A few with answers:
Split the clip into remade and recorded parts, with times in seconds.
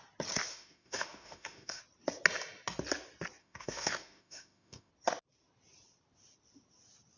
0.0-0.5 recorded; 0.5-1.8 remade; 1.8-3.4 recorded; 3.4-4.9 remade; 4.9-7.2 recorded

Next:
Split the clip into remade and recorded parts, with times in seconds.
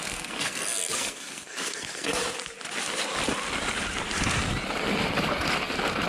0.0-2.2 remade; 2.2-6.1 recorded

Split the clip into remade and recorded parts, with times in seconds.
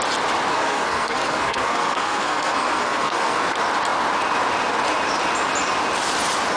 0.0-0.5 recorded; 0.5-3.5 remade; 3.5-6.6 recorded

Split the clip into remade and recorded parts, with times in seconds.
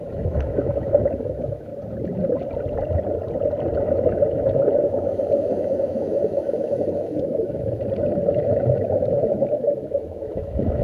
0.0-1.7 remade; 1.7-3.8 recorded; 3.8-7.8 remade; 7.8-8.3 recorded; 8.3-10.8 remade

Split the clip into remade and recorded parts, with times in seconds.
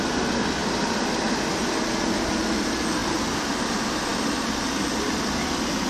0.0-5.9 recorded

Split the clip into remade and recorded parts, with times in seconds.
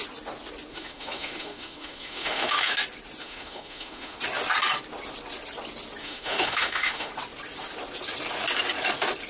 0.0-0.7 recorded; 0.7-2.7 remade; 2.7-3.2 recorded; 3.2-4.2 remade; 4.2-6.0 recorded; 6.0-7.1 remade; 7.1-9.3 recorded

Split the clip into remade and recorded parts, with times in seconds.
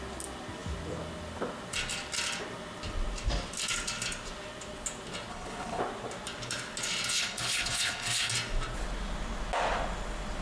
0.0-5.3 recorded; 5.3-5.8 remade; 5.8-7.2 recorded; 7.2-8.3 remade; 8.3-10.4 recorded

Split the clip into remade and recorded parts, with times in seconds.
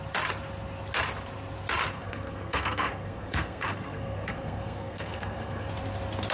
0.0-1.9 recorded; 1.9-5.7 remade; 5.7-6.3 recorded